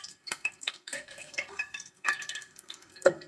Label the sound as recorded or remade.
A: remade